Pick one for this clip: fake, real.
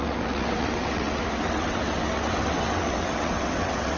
fake